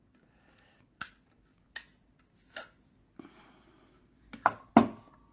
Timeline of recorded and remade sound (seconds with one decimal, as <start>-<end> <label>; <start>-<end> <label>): 0.0-5.3 recorded